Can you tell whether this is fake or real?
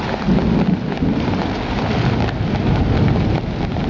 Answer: real